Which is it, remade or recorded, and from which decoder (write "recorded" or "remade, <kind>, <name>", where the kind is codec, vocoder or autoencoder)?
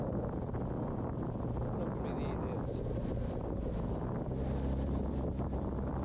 recorded